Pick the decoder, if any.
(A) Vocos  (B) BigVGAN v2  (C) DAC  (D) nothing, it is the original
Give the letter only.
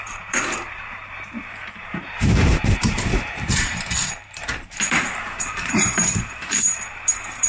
B